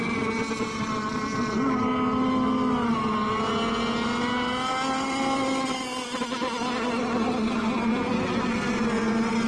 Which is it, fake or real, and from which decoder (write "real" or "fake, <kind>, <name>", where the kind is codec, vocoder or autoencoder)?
real